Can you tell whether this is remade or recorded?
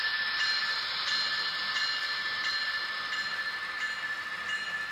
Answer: recorded